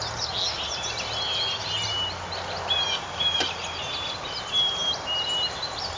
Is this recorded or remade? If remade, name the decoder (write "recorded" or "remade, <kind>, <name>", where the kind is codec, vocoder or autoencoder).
recorded